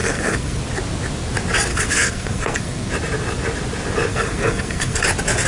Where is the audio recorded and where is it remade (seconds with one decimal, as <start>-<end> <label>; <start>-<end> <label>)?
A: 0.0-0.6 remade; 0.6-1.7 recorded; 1.7-2.9 remade; 2.9-4.1 recorded; 4.1-5.0 remade; 5.0-5.5 recorded

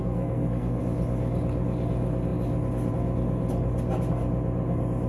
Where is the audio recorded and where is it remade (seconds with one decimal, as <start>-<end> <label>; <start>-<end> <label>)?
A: 0.0-0.8 remade; 0.8-5.1 recorded

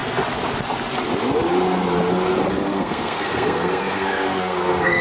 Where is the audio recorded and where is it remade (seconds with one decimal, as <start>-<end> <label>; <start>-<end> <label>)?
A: 0.0-2.5 recorded; 2.5-5.0 remade

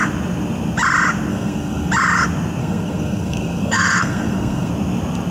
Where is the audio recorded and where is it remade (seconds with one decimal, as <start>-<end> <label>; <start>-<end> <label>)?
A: 0.0-1.3 recorded; 1.3-1.9 remade; 1.9-2.6 recorded; 2.6-4.7 remade; 4.7-5.3 recorded

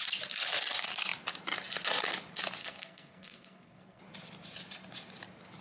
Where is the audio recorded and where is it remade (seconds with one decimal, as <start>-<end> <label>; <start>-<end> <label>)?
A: 0.0-2.6 recorded; 2.6-4.0 remade; 4.0-5.6 recorded